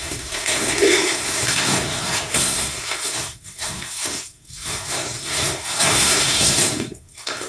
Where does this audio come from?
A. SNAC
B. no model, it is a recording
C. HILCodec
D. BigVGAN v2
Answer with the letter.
A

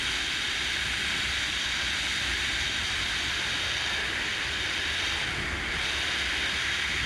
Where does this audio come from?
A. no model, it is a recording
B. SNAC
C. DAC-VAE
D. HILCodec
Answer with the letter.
A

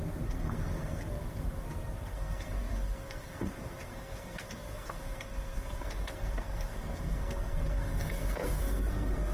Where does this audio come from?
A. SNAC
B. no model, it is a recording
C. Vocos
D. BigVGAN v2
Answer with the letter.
A